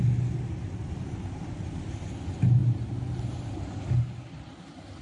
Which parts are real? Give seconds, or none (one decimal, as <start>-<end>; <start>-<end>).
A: 0.0-5.0